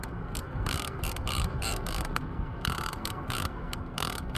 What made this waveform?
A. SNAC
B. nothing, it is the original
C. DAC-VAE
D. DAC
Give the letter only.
A